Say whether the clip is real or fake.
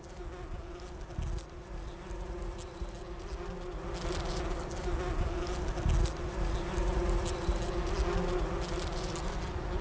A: real